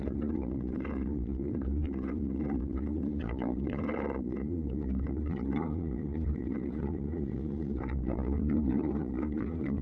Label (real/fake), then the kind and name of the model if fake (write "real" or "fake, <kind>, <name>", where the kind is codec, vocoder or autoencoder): fake, vocoder, Vocos